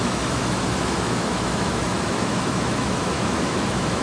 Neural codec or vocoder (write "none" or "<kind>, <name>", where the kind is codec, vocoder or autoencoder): autoencoder, DAC-VAE